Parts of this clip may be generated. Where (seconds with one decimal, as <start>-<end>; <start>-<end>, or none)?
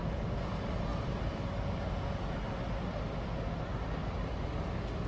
none